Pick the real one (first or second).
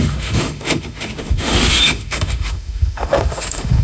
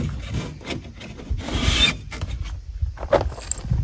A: second